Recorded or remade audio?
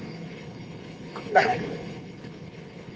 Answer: remade